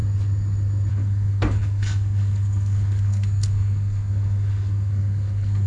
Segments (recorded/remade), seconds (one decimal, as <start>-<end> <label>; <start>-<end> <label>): 0.0-0.9 recorded; 0.9-5.7 remade